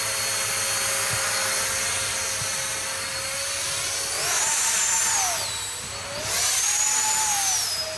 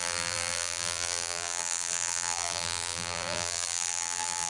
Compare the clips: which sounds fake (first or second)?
second